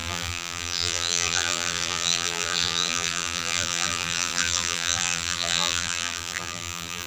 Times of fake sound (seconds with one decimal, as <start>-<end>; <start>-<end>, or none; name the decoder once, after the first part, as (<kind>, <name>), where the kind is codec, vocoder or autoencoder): 0.0-7.1 (vocoder, BigVGAN v2)